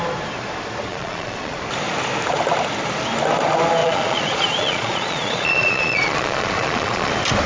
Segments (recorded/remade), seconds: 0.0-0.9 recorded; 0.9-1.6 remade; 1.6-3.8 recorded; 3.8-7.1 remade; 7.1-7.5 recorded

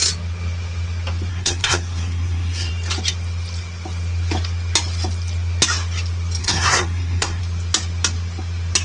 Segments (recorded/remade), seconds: 0.0-1.3 recorded; 1.3-2.7 remade; 2.7-6.4 recorded; 6.4-7.4 remade; 7.4-8.8 recorded

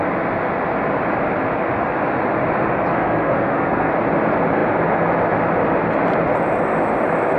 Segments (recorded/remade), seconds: 0.0-2.9 recorded; 2.9-3.9 remade; 3.9-7.4 recorded